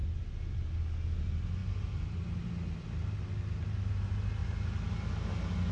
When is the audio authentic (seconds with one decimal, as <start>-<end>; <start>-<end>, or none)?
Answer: 0.0-5.7